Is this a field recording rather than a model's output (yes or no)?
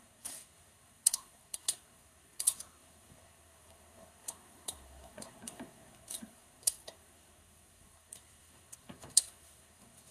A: no